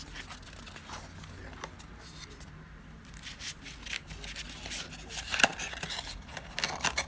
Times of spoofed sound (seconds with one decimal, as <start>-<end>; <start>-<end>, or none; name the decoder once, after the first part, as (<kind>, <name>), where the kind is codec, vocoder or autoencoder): none